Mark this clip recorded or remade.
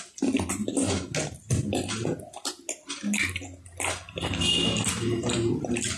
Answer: recorded